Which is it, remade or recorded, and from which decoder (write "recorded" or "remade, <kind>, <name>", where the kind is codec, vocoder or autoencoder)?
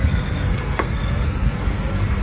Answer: remade, codec, SNAC